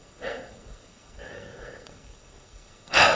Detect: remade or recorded remade